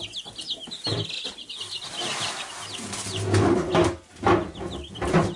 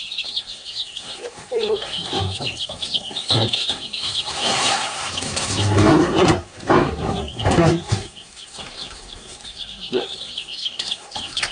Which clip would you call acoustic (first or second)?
first